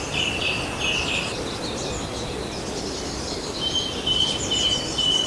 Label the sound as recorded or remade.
recorded